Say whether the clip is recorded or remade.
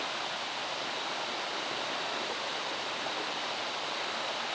recorded